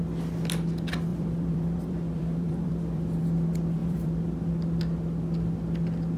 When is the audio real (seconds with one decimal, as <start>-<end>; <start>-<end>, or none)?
0.0-1.1; 3.2-3.8; 4.5-6.2